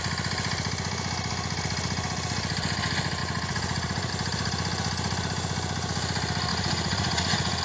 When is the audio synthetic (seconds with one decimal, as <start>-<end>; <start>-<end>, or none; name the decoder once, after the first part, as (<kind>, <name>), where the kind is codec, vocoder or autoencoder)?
3.2-4.1 (vocoder, Vocos); 6.5-7.6